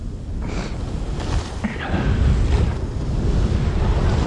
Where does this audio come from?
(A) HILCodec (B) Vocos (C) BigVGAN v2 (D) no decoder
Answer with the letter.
D